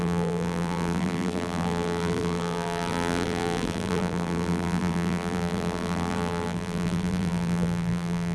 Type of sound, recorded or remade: remade